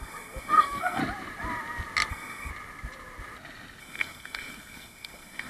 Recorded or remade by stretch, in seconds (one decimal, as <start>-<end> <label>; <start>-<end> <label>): 0.0-1.0 remade; 1.0-2.1 recorded; 2.1-2.5 remade; 2.5-3.8 recorded; 3.8-5.5 remade